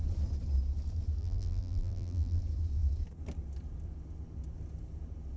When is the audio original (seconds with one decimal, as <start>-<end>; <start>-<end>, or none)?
0.0-1.2; 2.4-5.4